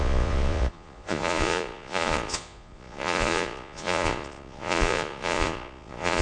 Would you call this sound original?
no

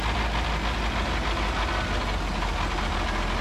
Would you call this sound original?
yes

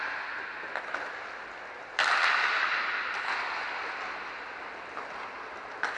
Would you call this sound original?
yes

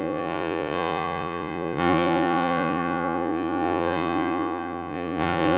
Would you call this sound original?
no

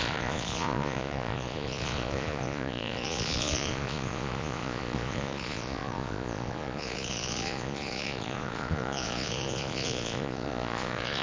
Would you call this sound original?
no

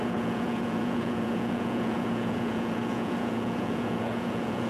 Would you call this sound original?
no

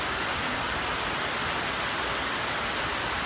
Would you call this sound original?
yes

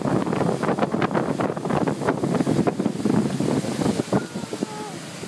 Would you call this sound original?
yes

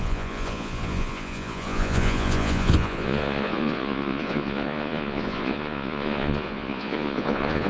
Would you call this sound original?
no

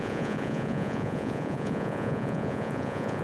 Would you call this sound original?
no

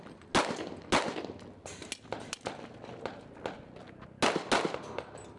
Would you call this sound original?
yes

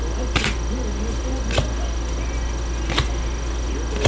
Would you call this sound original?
yes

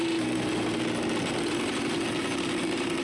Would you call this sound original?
yes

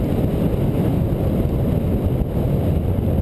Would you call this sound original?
yes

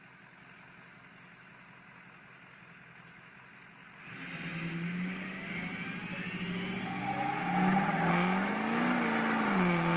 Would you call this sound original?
yes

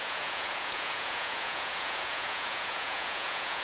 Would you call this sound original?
no